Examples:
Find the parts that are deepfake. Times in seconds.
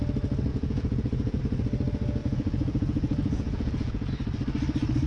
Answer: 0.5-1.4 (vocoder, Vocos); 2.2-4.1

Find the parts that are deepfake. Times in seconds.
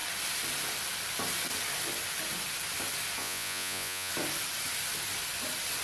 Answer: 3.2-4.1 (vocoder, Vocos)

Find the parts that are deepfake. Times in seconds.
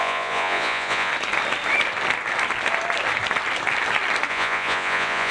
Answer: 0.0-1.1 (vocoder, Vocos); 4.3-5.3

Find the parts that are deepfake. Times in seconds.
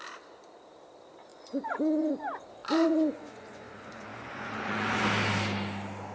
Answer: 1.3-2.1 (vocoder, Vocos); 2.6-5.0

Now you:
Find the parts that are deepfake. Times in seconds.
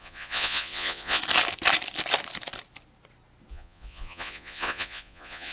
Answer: 0.0-1.2 (vocoder, Vocos); 3.5-5.5